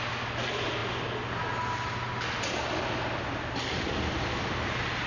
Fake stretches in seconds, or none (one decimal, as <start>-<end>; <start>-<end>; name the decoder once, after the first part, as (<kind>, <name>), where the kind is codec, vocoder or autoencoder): none